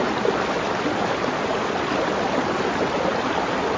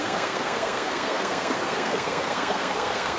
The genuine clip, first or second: first